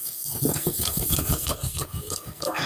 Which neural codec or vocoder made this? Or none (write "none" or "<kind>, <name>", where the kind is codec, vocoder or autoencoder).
codec, SNAC